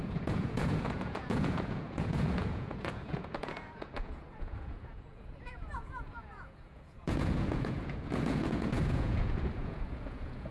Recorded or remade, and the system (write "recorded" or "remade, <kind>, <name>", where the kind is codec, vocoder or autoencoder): remade, vocoder, Vocos